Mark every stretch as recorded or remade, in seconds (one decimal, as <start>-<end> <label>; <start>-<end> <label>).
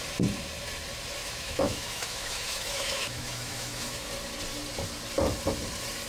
0.0-1.2 recorded; 1.2-4.1 remade; 4.1-6.1 recorded